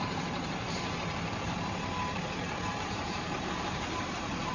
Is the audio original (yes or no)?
no